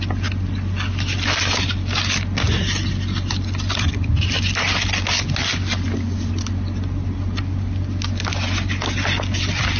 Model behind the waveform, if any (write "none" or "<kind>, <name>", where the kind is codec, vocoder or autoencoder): none